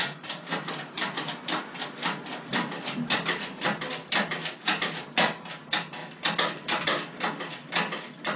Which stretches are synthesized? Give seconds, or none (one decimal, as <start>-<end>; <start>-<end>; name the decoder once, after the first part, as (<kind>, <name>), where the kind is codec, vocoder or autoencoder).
none